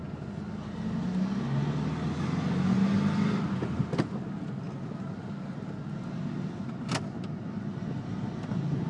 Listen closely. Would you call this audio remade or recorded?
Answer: recorded